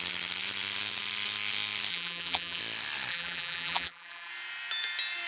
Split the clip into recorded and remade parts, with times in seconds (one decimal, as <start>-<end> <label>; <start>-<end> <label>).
0.0-1.9 recorded; 1.9-2.6 remade; 2.6-3.1 recorded; 3.1-4.3 remade; 4.3-5.3 recorded